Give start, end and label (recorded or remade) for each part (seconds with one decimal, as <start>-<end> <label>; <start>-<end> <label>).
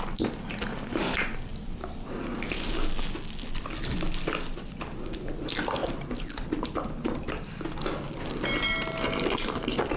0.0-10.0 recorded